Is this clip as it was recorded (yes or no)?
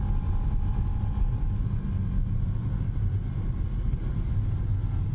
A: yes